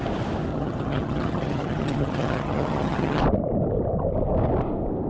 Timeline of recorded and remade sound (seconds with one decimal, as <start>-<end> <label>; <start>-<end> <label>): 0.0-0.5 recorded; 0.5-3.2 remade; 3.2-5.1 recorded